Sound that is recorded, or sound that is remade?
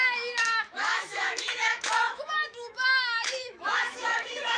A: remade